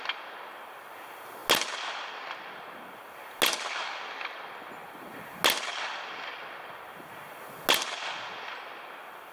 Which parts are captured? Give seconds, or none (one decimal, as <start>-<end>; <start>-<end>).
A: 0.0-9.3